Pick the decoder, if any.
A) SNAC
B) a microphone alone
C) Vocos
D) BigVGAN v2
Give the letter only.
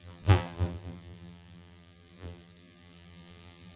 D